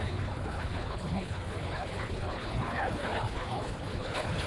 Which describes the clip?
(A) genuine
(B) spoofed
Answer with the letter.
B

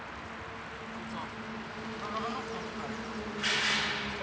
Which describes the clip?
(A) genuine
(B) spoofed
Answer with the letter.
A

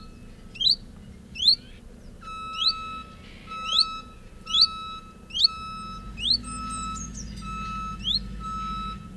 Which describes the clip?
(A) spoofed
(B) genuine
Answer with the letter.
B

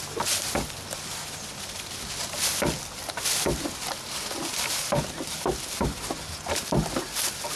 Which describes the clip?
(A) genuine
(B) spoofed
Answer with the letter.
A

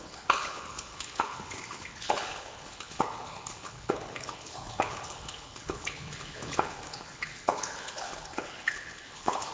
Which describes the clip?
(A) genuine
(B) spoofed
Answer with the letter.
B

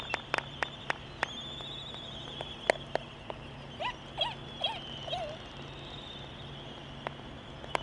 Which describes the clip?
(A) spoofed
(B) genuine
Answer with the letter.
B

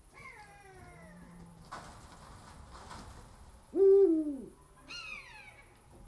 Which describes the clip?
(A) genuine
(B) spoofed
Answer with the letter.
A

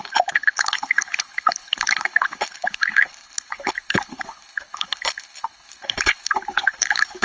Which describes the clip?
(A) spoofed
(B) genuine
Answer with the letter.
A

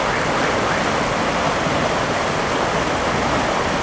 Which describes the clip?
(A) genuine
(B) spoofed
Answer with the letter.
A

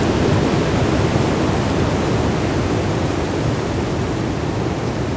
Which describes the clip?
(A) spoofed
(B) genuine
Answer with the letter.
B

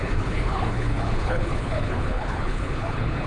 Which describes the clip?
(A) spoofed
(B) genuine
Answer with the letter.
A